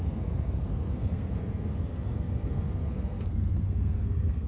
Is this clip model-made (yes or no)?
yes